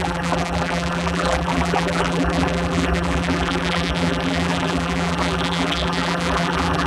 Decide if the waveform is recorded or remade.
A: remade